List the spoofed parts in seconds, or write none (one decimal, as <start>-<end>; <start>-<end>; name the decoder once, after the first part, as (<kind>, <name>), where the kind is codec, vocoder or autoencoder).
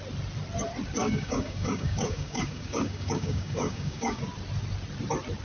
1.0-4.2 (codec, DAC)